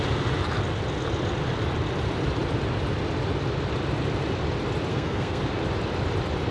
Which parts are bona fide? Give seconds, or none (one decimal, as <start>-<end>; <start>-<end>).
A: 0.0-4.9; 5.4-6.5